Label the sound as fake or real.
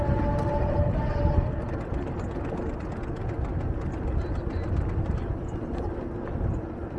real